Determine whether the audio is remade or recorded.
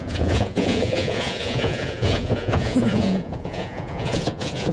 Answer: remade